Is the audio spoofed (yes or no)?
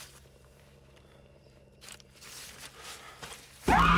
yes